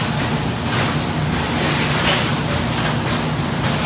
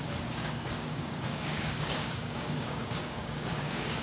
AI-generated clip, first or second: second